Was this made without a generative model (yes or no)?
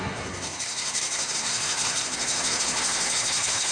no